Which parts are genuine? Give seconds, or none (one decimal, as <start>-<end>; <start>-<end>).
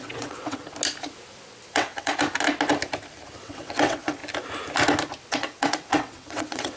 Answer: 0.6-1.7; 2.1-3.4; 4.2-5.3